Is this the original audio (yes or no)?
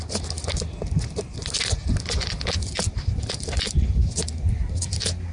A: yes